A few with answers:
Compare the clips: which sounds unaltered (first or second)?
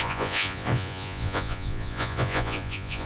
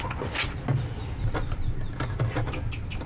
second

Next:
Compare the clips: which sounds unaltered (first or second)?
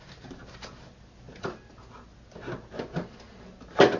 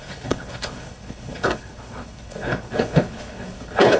first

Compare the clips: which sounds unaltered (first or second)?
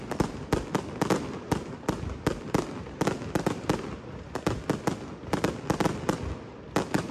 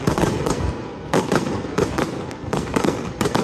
first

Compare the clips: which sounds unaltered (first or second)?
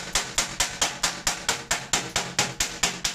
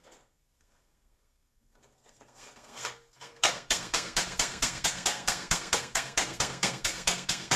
first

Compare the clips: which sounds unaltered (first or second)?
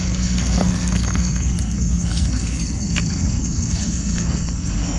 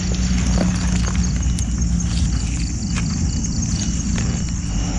second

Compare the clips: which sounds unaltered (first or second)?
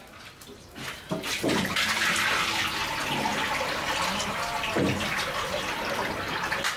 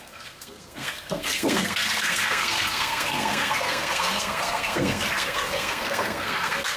first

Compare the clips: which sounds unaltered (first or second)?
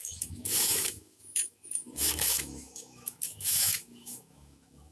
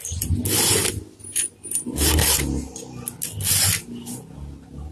second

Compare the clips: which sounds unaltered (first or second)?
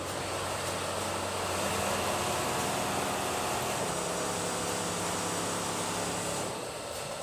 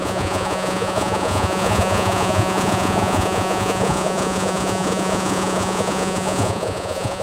first